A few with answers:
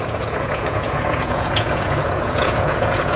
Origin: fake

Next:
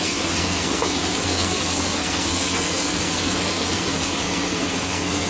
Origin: fake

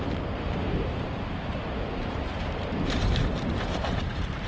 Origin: fake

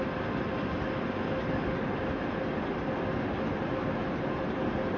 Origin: real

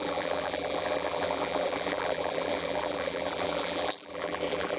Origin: fake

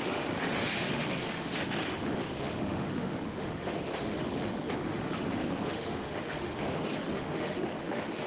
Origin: fake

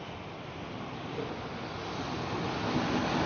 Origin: real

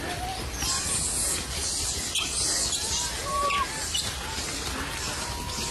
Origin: real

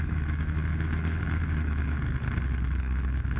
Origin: fake